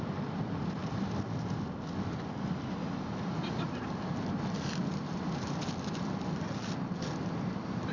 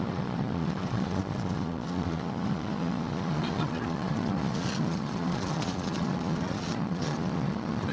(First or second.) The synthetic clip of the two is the second